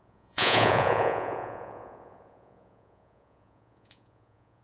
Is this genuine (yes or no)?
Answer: no